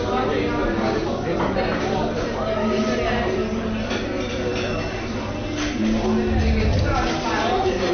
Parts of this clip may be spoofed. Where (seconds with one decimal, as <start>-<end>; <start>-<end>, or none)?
none